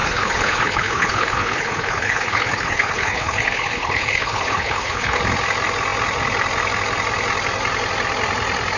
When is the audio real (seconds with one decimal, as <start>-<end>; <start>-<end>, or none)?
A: 5.2-8.8